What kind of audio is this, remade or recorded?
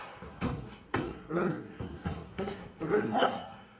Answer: remade